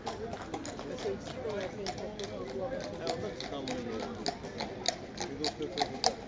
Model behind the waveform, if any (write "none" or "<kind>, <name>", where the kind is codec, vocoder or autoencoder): none